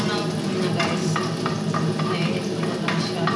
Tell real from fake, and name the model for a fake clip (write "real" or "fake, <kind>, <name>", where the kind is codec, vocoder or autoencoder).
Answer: real